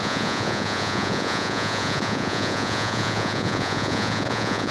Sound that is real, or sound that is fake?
fake